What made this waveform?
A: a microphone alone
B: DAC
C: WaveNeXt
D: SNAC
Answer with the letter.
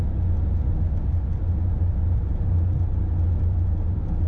A